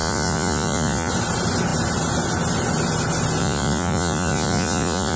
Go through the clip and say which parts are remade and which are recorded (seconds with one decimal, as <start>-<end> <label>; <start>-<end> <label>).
0.0-1.1 remade; 1.1-3.4 recorded; 3.4-5.2 remade